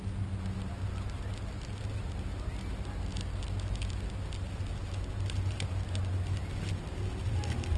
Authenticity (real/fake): real